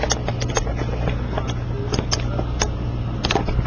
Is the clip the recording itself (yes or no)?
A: yes